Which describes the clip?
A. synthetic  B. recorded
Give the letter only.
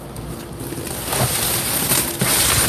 B